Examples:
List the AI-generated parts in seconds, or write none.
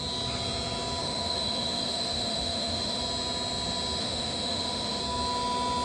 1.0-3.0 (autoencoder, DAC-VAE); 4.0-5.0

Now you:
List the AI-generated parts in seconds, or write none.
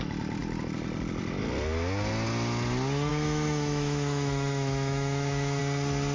3.1-5.6 (autoencoder, DAC-VAE)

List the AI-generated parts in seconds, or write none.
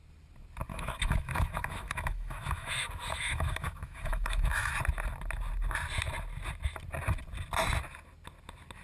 0.7-4.7 (autoencoder, DAC-VAE)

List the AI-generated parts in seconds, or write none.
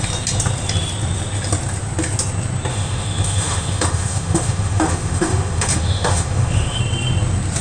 2.7-6.8 (autoencoder, DAC-VAE)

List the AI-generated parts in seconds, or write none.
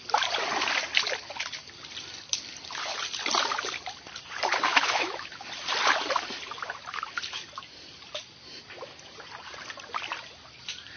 4.7-5.3 (autoencoder, DAC-VAE)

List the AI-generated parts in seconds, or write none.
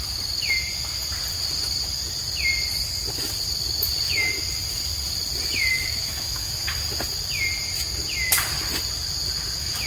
5.7-6.8 (autoencoder, DAC-VAE)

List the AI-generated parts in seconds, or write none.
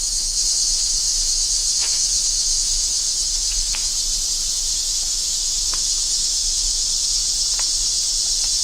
0.0-3.9 (autoencoder, DAC-VAE); 4.7-7.2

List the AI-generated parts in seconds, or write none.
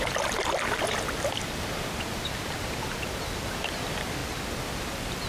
none